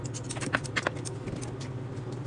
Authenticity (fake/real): real